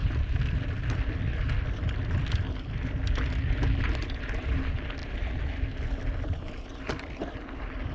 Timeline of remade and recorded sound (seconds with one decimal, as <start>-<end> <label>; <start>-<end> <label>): 0.0-7.9 recorded